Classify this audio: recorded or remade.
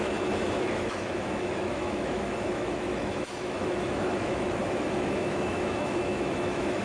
remade